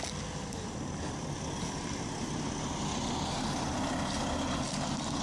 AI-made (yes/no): no